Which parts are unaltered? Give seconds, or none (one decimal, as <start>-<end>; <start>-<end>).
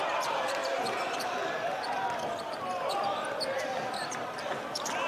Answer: 0.0-5.1